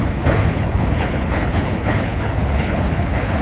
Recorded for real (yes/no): no